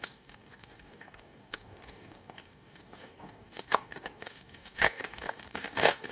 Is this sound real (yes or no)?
no